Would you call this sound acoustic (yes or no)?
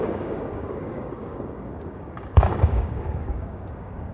no